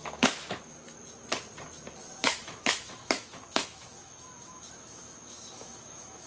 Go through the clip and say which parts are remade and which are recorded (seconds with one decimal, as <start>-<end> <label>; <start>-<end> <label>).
0.0-0.6 remade; 0.6-2.2 recorded; 2.2-6.3 remade